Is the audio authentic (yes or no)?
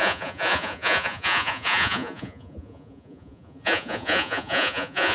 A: no